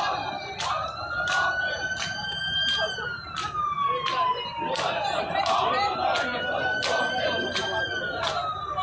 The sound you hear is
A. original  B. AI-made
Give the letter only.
A